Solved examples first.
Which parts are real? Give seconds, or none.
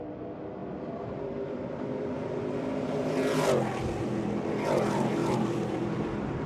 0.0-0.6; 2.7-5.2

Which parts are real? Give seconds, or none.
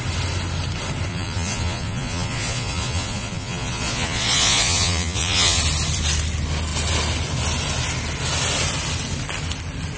0.0-1.1; 5.6-10.0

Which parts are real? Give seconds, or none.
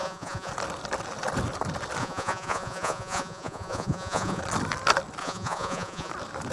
0.5-2.0; 4.4-5.2; 6.1-6.5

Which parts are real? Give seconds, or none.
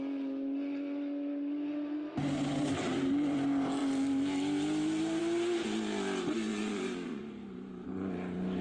0.0-6.5; 7.2-8.6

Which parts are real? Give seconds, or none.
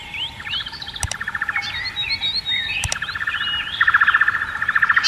1.6-2.2; 3.4-5.1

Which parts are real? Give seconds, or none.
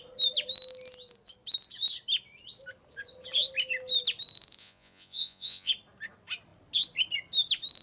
0.0-4.6; 5.7-7.8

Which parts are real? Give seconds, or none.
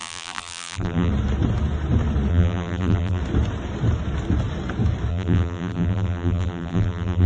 1.1-2.3; 3.2-5.1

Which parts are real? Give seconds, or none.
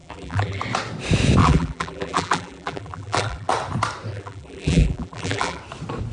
0.6-1.4; 3.5-4.1; 5.6-6.1